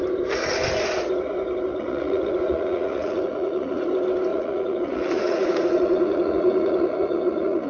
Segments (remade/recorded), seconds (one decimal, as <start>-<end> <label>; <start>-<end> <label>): 0.0-1.7 recorded; 1.7-3.8 remade; 3.8-4.3 recorded; 4.3-7.7 remade